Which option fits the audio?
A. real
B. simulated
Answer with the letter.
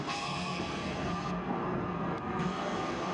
B